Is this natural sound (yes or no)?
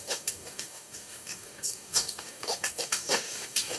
no